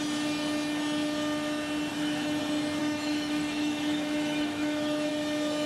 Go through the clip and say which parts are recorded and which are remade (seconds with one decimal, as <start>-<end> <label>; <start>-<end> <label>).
0.0-1.9 recorded; 1.9-2.4 remade; 2.4-2.8 recorded; 2.8-5.1 remade; 5.1-5.7 recorded

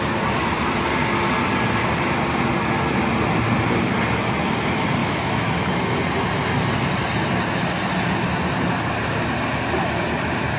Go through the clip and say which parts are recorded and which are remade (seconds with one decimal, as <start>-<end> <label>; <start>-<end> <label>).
0.0-5.0 recorded; 5.0-5.8 remade; 5.8-10.6 recorded

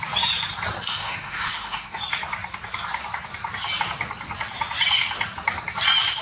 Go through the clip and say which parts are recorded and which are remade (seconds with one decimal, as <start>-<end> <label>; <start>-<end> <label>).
0.0-0.9 recorded; 0.9-2.0 remade; 2.0-6.2 recorded

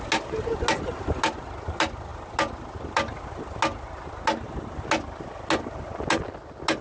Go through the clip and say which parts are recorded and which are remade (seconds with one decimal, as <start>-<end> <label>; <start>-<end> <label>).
0.0-6.8 recorded

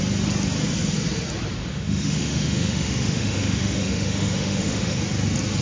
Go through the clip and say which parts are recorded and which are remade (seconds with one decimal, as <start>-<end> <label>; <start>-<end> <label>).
0.0-1.6 recorded; 1.6-5.0 remade; 5.0-5.6 recorded

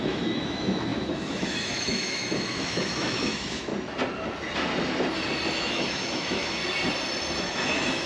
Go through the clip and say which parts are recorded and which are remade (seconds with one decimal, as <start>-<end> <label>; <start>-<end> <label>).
0.0-3.7 remade; 3.7-5.6 recorded; 5.6-6.6 remade; 6.6-7.4 recorded; 7.4-8.1 remade